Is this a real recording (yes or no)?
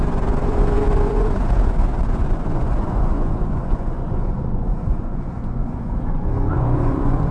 no